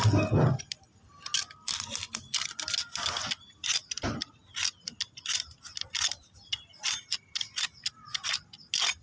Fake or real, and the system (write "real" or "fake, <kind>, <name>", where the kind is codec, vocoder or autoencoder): real